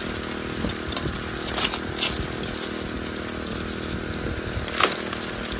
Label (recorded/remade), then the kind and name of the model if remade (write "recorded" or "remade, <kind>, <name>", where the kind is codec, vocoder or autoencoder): recorded